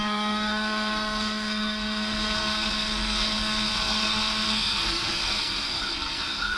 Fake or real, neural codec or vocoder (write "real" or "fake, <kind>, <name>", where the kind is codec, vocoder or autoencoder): fake, codec, SNAC